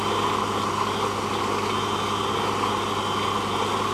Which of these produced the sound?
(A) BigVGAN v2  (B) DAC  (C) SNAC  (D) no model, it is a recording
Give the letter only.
D